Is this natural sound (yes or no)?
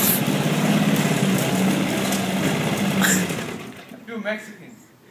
yes